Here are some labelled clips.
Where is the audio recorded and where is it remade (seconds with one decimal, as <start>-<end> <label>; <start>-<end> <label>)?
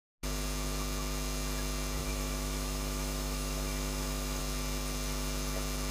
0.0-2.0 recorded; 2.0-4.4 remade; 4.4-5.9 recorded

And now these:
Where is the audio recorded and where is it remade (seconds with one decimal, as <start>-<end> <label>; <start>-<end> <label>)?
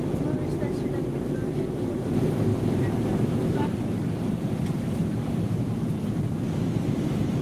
0.0-7.4 recorded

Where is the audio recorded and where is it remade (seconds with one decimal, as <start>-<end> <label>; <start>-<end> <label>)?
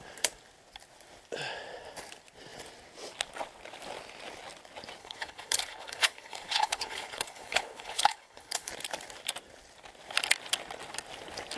0.0-5.0 recorded; 5.0-8.7 remade; 8.7-11.6 recorded